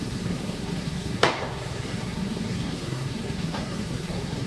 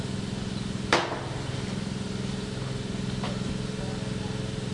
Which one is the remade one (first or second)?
first